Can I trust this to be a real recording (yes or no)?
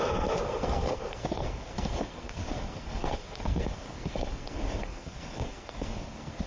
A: no